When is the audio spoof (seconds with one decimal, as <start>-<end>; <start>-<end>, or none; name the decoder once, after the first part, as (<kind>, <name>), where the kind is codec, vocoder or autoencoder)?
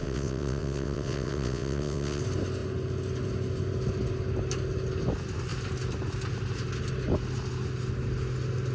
0.0-2.2 (vocoder, WaveNeXt)